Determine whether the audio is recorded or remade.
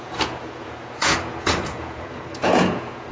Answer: remade